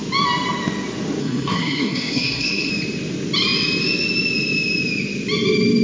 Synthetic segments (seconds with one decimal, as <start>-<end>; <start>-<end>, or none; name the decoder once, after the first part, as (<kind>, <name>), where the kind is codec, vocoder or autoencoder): 1.2-2.7 (codec, SNAC)